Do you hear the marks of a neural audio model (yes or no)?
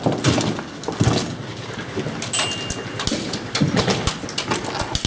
no